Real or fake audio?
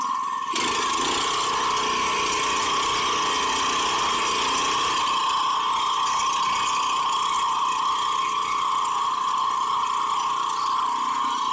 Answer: real